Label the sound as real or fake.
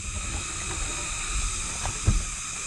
real